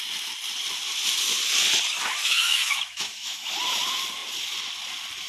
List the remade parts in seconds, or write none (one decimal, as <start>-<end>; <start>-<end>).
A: 2.2-3.5